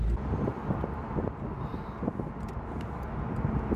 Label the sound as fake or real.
real